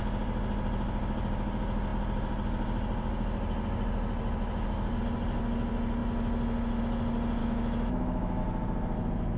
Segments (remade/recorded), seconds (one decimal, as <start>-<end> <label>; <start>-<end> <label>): 0.0-7.4 recorded; 7.4-8.4 remade; 8.4-9.4 recorded